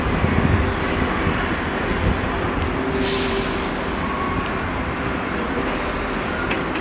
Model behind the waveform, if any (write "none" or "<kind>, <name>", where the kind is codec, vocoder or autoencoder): none